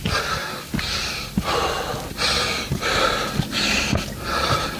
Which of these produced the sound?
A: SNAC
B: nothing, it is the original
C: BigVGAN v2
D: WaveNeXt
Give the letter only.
B